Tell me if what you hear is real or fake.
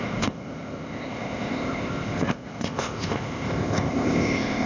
fake